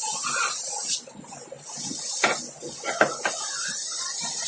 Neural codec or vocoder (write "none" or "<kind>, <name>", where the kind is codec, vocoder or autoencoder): none